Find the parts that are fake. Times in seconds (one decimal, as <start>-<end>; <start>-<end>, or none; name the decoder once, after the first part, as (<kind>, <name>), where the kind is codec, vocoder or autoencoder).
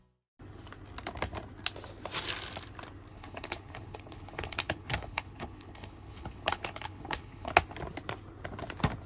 3.1-7.5 (codec, HILCodec)